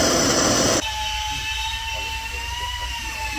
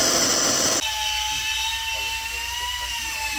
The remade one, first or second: first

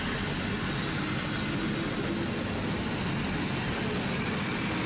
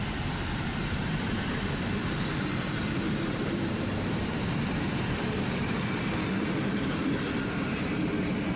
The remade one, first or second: second